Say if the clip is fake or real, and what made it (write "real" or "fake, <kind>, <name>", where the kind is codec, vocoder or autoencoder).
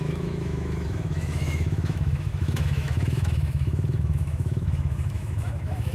fake, autoencoder, DAC-VAE